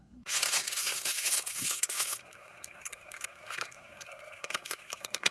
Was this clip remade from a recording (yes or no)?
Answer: yes